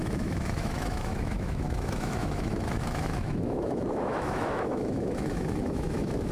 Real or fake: fake